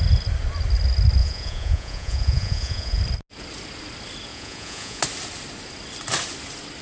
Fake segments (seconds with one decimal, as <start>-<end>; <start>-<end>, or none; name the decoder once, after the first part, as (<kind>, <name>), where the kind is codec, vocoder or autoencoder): 1.2-3.0 (vocoder, Vocos); 4.3-5.0